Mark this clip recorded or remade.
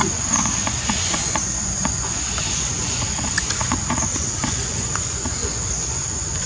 remade